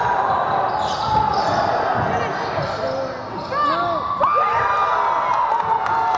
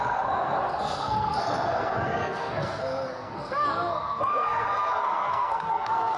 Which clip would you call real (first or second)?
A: first